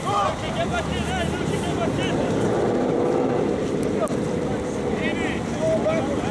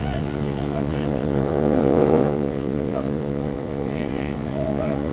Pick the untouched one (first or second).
first